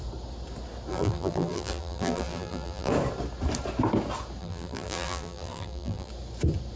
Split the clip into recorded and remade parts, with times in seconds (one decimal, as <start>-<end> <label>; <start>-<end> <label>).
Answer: 0.0-0.9 recorded; 0.9-2.9 remade; 2.9-4.4 recorded; 4.4-6.1 remade; 6.1-6.8 recorded